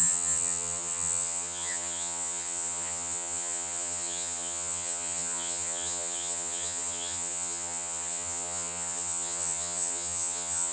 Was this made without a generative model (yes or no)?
no